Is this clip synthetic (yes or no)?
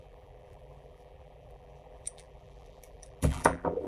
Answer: yes